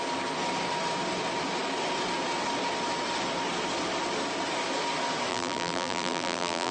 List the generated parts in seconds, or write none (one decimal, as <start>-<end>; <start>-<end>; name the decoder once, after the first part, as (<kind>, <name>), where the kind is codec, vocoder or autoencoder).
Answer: 5.3-6.7 (vocoder, BigVGAN v2)